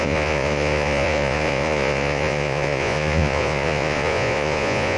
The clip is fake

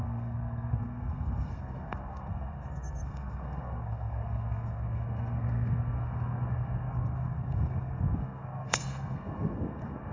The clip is fake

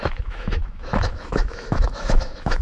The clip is fake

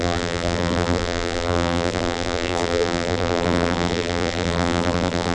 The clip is fake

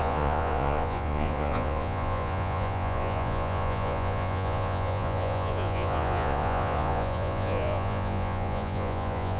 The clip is fake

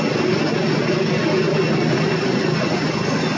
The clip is real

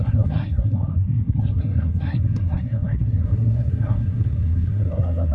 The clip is fake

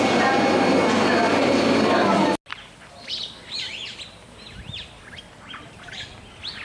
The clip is real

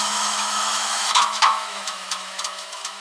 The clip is fake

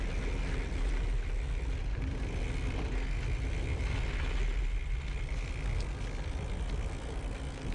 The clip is real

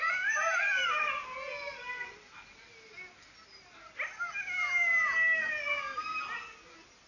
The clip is real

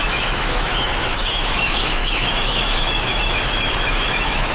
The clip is fake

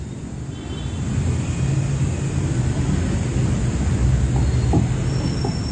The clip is real